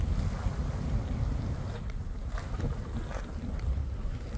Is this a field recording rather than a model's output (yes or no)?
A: yes